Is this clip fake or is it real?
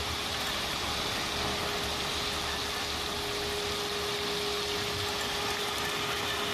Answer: real